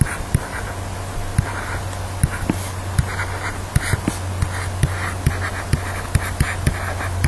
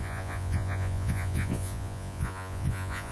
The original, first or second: first